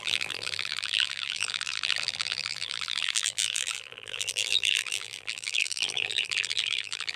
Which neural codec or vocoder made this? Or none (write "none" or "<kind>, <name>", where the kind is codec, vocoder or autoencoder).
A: vocoder, BigVGAN v2